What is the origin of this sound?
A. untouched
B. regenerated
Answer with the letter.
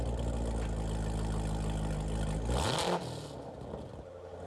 A